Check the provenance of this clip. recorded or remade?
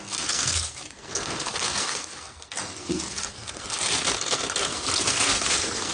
remade